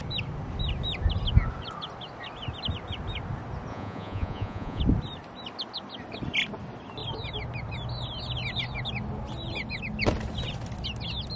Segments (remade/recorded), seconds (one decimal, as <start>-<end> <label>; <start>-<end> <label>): 0.0-3.7 recorded; 3.7-4.8 remade; 4.8-11.4 recorded